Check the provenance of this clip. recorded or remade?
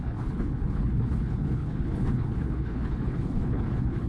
remade